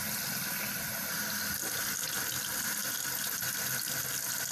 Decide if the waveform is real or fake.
real